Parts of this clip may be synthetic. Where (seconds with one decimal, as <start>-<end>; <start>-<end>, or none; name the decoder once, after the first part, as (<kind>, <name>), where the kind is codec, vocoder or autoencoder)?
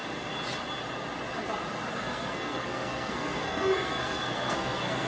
1.9-5.1 (codec, SNAC)